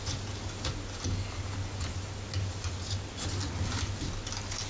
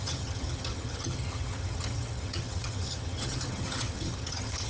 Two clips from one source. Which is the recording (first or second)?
first